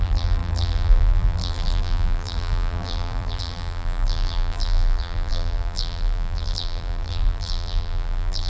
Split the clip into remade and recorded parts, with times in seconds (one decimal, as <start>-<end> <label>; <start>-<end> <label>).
0.0-8.5 remade